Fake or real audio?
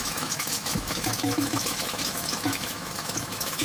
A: fake